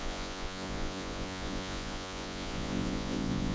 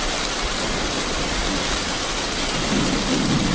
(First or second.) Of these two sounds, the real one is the second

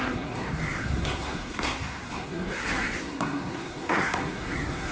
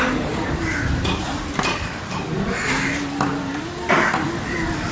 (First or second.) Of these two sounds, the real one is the second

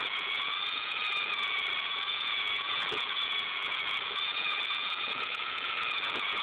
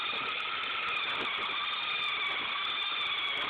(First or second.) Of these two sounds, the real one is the second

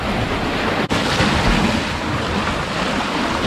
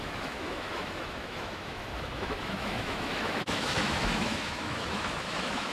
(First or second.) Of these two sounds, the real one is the first